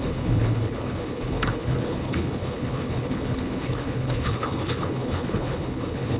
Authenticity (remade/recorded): remade